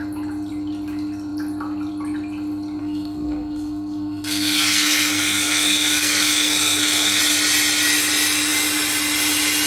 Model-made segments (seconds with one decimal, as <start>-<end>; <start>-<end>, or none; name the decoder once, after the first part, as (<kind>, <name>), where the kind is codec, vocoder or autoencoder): 2.8-7.2 (codec, SNAC)

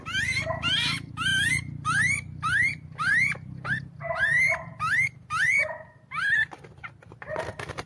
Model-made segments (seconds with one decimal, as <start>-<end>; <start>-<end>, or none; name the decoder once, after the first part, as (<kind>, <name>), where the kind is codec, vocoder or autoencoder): 1.3-4.5 (vocoder, BigVGAN v2)

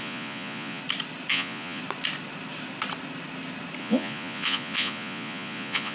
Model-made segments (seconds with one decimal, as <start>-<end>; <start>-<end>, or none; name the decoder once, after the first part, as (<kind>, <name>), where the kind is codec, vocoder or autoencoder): 0.0-0.8 (vocoder, Vocos); 1.3-1.8; 3.8-5.9

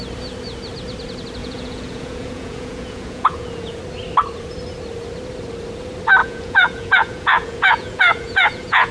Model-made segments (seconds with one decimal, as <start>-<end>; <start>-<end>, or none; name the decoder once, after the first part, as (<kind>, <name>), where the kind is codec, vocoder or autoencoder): 1.4-3.8 (vocoder, Vocos); 6.2-8.9

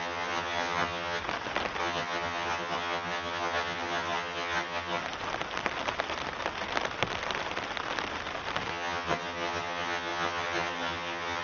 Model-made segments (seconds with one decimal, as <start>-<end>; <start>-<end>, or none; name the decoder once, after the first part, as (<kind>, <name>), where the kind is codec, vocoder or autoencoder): 0.0-1.2 (vocoder, HiFi-GAN); 1.8-5.0; 8.7-11.4

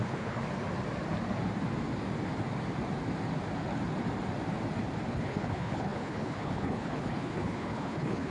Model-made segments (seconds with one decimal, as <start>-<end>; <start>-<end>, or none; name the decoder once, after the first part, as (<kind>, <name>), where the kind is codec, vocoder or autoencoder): 0.0-0.4 (codec, HILCodec); 5.1-8.3